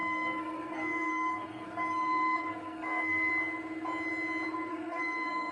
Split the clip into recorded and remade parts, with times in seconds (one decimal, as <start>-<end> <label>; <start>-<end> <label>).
0.0-3.3 remade; 3.3-4.7 recorded; 4.7-5.5 remade